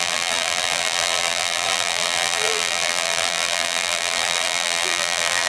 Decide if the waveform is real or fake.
fake